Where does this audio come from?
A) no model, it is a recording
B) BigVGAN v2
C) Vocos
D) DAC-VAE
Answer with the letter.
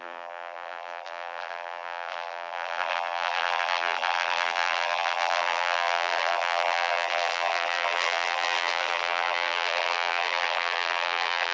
B